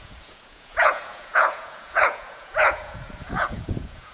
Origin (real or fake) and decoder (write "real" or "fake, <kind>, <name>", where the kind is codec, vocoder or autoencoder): fake, vocoder, Vocos